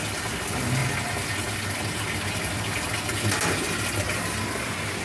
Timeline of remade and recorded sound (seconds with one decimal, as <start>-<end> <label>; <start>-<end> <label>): 0.0-5.0 recorded